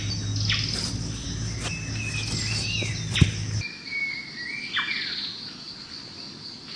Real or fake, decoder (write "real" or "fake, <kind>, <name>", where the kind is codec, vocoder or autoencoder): real